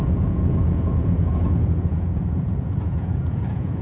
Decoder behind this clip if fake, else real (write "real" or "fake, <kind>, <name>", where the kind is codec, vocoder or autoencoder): fake, vocoder, Vocos